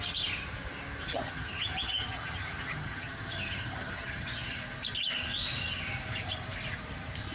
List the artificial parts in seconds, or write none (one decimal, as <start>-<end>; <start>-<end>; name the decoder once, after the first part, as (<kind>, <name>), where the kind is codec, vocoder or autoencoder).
1.0-4.6 (vocoder, HiFi-GAN)